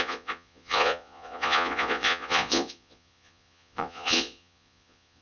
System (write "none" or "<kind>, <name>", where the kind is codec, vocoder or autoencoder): vocoder, Vocos